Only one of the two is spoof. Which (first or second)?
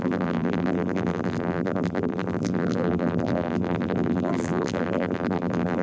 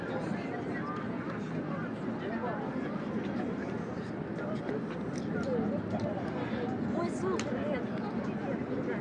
first